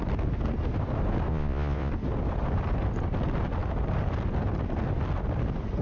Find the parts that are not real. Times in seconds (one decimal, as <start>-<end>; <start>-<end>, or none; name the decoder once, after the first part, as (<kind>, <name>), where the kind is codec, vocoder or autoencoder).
1.3-1.9 (vocoder, Vocos)